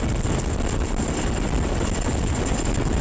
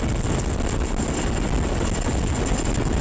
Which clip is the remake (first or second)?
first